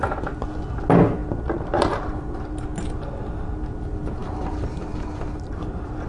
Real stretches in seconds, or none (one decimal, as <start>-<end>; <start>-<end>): 0.0-6.1